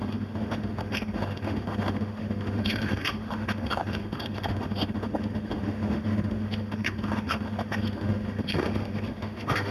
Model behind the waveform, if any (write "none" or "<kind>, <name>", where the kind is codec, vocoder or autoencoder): autoencoder, DAC-VAE